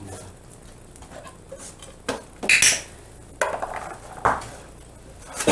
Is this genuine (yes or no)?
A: yes